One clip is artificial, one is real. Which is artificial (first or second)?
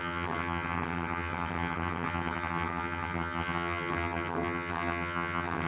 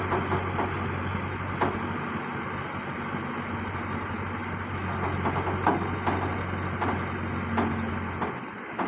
first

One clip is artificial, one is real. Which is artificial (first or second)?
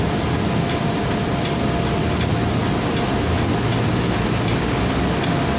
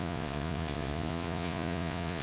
second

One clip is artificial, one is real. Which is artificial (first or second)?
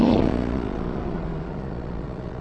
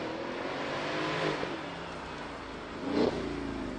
first